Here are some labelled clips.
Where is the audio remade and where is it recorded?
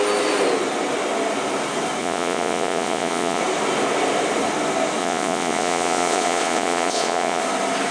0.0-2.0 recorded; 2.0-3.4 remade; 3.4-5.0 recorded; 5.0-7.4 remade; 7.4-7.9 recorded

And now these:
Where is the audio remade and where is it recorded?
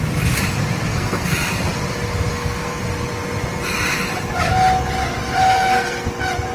0.0-0.9 recorded; 0.9-1.5 remade; 1.5-2.3 recorded; 2.3-2.8 remade; 2.8-5.4 recorded; 5.4-6.1 remade; 6.1-6.5 recorded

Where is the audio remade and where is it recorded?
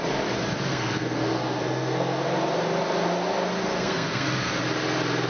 0.0-0.7 recorded; 0.7-2.2 remade; 2.2-3.6 recorded; 3.6-4.6 remade; 4.6-5.3 recorded